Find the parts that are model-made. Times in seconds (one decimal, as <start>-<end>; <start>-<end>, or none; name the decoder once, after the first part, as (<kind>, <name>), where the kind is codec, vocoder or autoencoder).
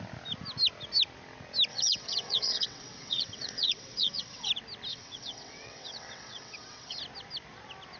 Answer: 1.7-4.5 (vocoder, WaveNeXt); 4.9-7.0